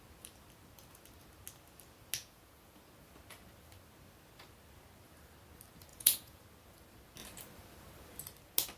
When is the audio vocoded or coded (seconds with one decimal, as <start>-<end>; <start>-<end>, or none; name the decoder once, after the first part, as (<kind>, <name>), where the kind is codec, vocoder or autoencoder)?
2.2-2.8 (vocoder, Vocos); 5.9-6.4